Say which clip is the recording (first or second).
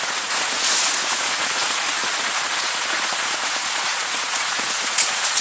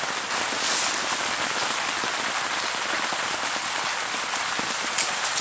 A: second